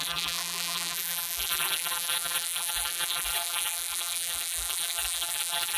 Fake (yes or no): yes